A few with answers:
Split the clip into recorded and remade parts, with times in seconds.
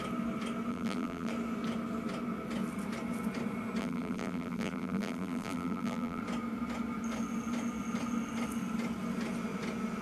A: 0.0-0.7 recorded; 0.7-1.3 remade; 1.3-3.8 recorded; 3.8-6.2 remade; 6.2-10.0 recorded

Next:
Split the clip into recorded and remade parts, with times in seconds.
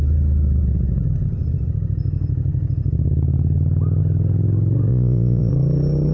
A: 0.0-4.9 recorded; 4.9-5.5 remade; 5.5-6.1 recorded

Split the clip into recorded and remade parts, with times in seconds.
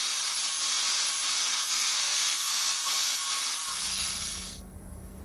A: 0.0-1.4 recorded; 1.4-3.2 remade; 3.2-3.7 recorded; 3.7-5.2 remade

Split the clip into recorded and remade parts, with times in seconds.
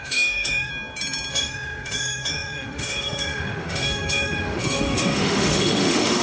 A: 0.0-0.7 remade; 0.7-1.3 recorded; 1.3-6.2 remade